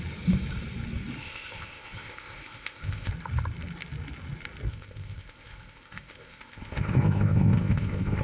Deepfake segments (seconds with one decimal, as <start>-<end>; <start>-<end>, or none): 1.2-3.1; 4.7-8.2